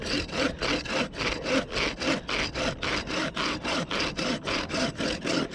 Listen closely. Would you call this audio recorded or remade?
recorded